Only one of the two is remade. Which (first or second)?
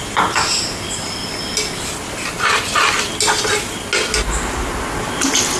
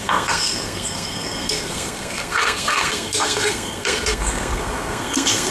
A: second